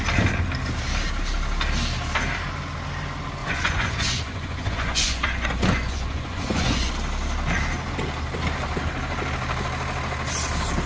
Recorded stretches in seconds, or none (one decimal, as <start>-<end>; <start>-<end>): 0.0-3.4; 6.9-10.9